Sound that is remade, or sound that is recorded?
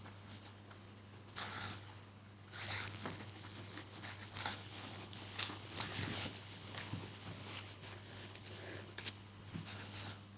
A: remade